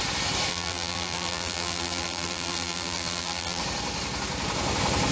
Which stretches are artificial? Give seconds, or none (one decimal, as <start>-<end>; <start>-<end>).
0.5-3.6